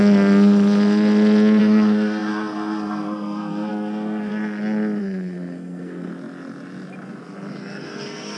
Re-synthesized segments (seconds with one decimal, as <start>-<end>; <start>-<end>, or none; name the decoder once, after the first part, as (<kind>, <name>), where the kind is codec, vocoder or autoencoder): 1.6-4.3 (codec, SNAC); 5.0-6.1; 7.6-8.4